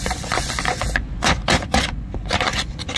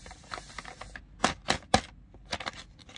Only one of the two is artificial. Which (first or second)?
first